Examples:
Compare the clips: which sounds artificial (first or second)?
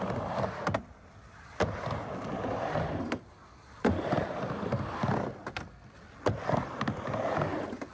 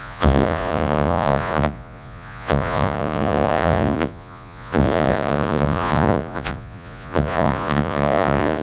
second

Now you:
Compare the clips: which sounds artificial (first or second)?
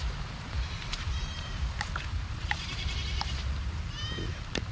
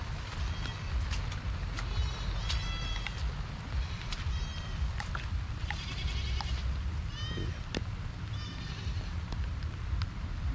first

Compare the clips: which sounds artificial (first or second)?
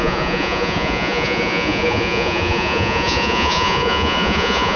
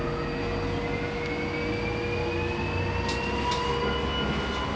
first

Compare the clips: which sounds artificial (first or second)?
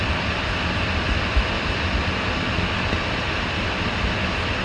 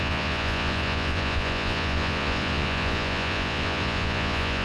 second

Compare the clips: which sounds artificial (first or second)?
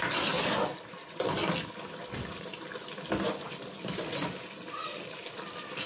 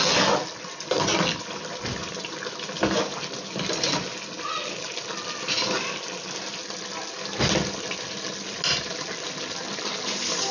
first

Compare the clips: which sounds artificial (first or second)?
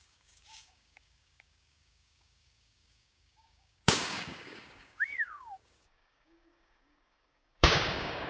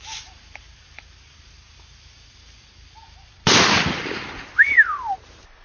first